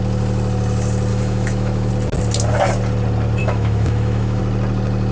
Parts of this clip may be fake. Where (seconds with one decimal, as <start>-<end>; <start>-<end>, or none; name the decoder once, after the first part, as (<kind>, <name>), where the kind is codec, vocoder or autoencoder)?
1.1-1.9 (autoencoder, DAC-VAE); 3.4-4.4